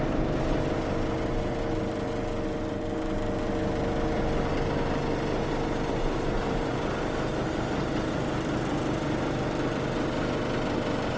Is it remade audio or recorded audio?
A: recorded